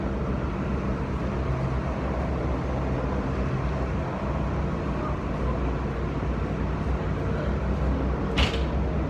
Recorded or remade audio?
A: recorded